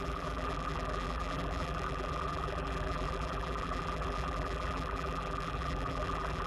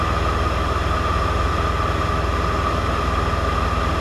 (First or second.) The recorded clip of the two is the second